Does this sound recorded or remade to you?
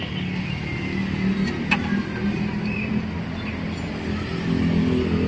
recorded